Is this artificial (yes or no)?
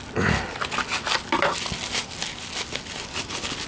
no